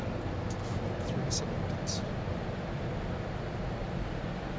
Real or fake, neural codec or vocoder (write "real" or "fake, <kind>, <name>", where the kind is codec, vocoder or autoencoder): real